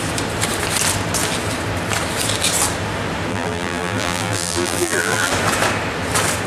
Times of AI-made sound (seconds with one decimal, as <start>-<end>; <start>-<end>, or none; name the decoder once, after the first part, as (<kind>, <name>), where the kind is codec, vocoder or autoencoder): 3.3-5.3 (vocoder, BigVGAN v2)